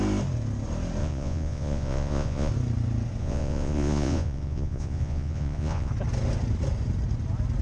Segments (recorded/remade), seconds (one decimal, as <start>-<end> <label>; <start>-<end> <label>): 0.0-1.0 recorded; 1.0-2.5 remade; 2.5-3.2 recorded; 3.2-5.9 remade; 5.9-7.6 recorded